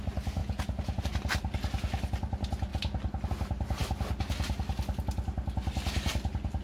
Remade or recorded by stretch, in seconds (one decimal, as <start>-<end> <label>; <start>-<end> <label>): 0.0-0.4 recorded; 0.4-1.0 remade; 1.0-6.6 recorded